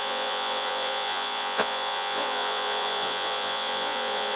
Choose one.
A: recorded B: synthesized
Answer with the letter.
B